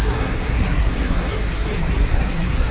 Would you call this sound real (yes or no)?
no